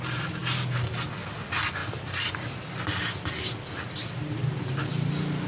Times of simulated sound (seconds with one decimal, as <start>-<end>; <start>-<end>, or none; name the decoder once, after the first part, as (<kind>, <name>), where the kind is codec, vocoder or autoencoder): 1.8-5.1 (vocoder, BigVGAN v2)